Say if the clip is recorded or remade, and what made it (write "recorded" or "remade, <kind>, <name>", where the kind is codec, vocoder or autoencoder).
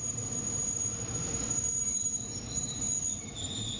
remade, vocoder, BigVGAN v2